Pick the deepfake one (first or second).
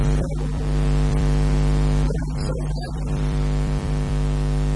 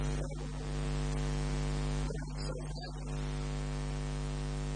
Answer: first